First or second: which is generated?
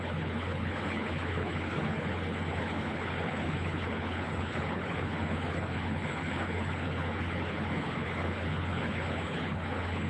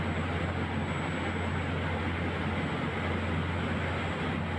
first